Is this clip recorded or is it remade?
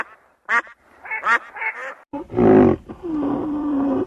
remade